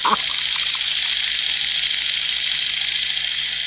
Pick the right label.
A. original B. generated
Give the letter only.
A